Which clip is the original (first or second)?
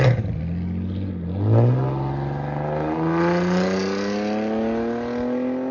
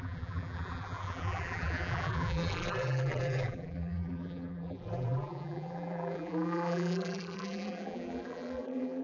first